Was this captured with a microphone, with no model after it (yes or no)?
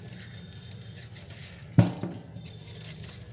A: yes